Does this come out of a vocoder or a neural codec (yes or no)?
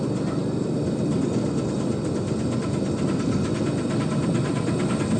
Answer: no